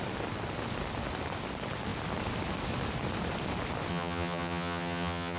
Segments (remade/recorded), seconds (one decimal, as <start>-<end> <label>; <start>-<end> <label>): 0.0-3.9 recorded; 3.9-5.4 remade